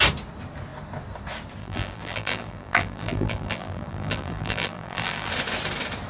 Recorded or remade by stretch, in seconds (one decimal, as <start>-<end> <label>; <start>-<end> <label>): 0.0-1.6 recorded; 1.6-5.3 remade; 5.3-6.1 recorded